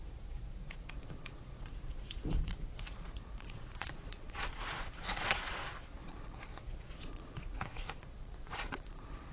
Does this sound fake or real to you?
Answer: fake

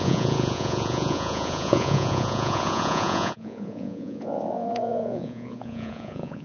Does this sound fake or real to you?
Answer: fake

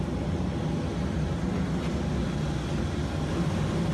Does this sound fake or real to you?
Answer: real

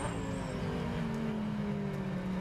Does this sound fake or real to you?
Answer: real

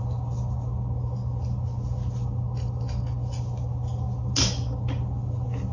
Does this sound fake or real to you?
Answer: real